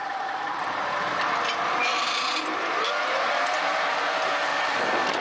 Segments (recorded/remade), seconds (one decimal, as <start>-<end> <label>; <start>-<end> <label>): 0.0-0.5 remade; 0.5-1.9 recorded; 1.9-4.0 remade; 4.0-5.2 recorded

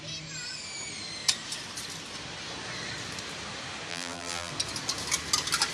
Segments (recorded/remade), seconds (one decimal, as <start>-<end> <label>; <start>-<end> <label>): 0.0-3.9 recorded; 3.9-4.5 remade; 4.5-5.7 recorded

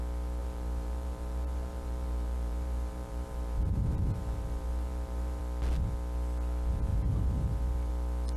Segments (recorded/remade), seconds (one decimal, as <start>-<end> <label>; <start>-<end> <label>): 0.0-0.4 recorded; 0.4-5.4 remade; 5.4-6.9 recorded; 6.9-7.9 remade; 7.9-8.4 recorded